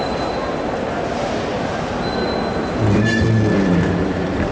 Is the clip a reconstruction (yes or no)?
no